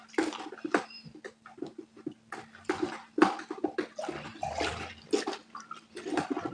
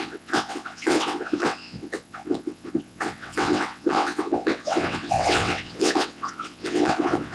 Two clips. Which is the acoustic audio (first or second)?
first